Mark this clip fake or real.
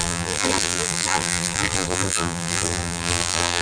fake